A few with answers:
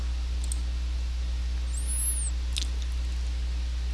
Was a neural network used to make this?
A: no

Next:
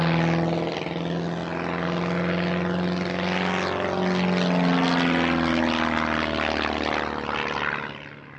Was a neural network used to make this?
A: no